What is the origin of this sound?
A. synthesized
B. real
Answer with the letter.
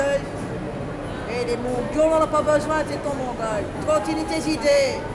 B